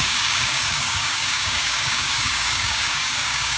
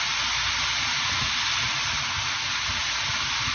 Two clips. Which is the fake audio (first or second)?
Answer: first